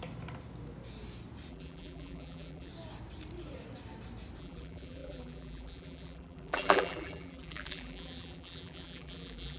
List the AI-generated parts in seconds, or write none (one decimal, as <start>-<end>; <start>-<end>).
1.5-2.7; 4.4-9.6